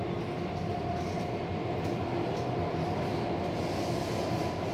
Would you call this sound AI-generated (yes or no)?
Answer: no